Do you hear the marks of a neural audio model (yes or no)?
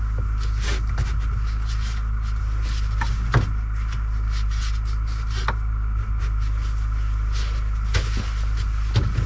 no